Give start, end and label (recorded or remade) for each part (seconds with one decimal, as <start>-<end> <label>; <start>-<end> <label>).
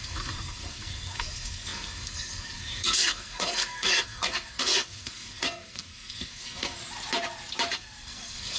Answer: 0.0-6.8 remade; 6.8-7.7 recorded; 7.7-8.6 remade